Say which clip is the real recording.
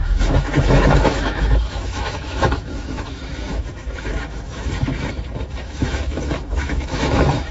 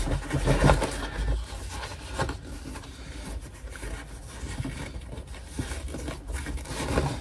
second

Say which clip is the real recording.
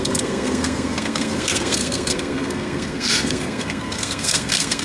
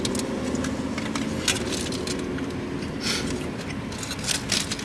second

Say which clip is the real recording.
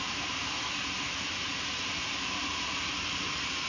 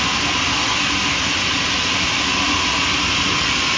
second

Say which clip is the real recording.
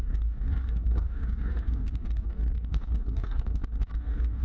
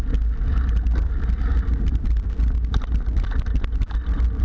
second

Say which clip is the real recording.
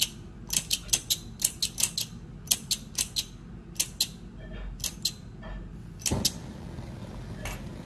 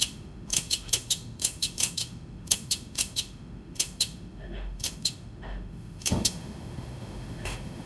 first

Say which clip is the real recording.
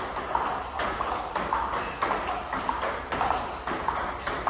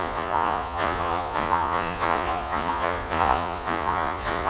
first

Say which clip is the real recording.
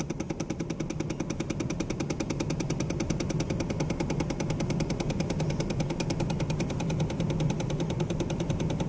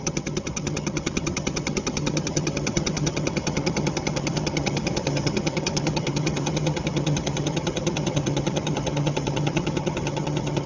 first